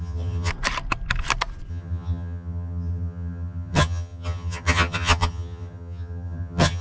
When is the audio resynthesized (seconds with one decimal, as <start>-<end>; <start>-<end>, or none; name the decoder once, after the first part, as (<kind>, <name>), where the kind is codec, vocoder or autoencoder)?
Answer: 0.0-0.5 (vocoder, HiFi-GAN); 1.7-6.8